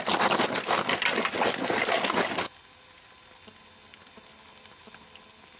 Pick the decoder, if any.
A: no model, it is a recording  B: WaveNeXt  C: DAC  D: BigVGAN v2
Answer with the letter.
A